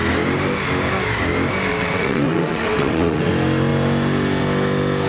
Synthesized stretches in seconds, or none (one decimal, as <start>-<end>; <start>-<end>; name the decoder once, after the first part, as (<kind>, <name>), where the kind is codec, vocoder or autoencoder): 1.7-3.3 (vocoder, WaveNeXt)